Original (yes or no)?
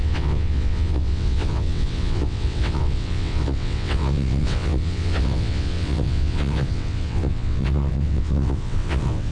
no